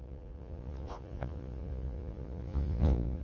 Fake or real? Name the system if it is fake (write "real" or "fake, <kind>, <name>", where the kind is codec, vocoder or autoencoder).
fake, vocoder, Vocos